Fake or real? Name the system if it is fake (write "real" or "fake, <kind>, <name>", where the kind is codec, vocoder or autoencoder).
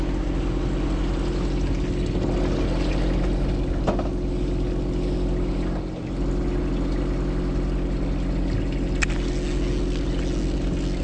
real